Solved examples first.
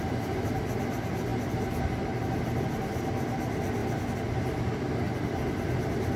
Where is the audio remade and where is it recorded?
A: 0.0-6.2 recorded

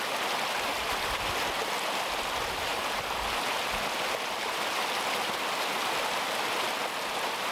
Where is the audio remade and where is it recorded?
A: 0.0-7.5 recorded

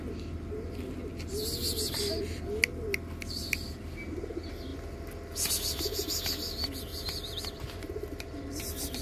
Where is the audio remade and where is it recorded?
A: 0.0-6.9 recorded; 6.9-8.6 remade; 8.6-9.0 recorded